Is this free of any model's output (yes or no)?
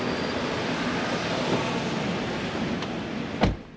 yes